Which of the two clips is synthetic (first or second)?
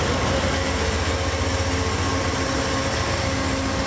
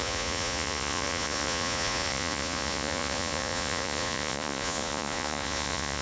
second